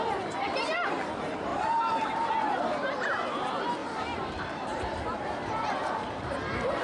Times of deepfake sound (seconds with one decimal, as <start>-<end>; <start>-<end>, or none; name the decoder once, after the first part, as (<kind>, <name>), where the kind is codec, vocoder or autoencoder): 1.5-2.3 (vocoder, BigVGAN v2); 3.8-6.3